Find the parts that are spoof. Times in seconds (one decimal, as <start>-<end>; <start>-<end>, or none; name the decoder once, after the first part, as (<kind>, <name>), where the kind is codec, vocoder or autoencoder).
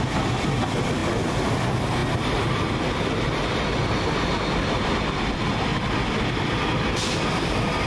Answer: none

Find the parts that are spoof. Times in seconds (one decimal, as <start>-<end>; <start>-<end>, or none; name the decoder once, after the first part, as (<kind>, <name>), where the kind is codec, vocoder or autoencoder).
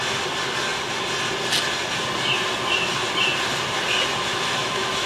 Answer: 4.3-5.1 (autoencoder, DAC-VAE)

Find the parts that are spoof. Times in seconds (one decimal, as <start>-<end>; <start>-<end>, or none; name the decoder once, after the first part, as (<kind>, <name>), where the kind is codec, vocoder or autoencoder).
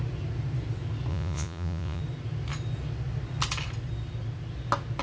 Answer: 1.1-2.0 (vocoder, Vocos)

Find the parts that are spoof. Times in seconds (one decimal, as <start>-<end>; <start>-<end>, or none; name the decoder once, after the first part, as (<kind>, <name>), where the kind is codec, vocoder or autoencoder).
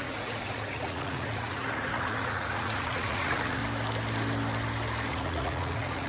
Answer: 0.0-3.6 (vocoder, Vocos); 5.1-6.1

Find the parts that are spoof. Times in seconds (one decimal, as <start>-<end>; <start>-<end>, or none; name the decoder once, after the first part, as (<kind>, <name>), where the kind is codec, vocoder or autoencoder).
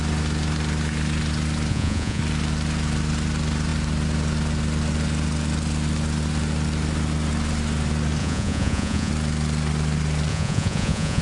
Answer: 1.7-2.2 (vocoder, Vocos); 8.2-9.1; 10.3-11.2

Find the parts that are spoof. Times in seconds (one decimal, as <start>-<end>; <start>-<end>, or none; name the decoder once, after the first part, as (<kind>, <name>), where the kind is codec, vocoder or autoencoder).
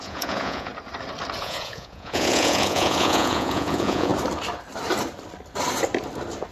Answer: 0.0-0.7 (vocoder, Vocos); 1.4-4.1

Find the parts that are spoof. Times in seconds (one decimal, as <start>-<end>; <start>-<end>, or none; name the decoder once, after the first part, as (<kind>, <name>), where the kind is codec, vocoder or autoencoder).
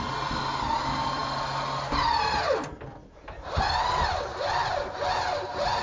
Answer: none